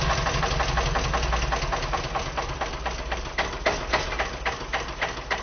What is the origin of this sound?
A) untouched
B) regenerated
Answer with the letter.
A